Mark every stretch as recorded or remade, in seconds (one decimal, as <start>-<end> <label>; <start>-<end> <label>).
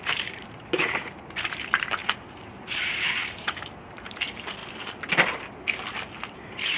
0.0-4.6 remade; 4.6-6.3 recorded; 6.3-6.8 remade